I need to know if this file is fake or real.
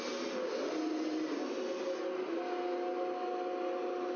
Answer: real